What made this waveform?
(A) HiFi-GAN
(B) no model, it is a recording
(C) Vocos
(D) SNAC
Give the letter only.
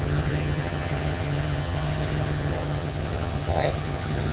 A